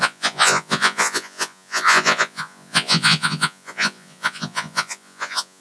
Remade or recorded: remade